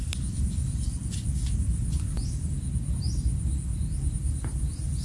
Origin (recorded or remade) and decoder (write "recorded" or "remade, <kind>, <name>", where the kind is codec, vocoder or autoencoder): recorded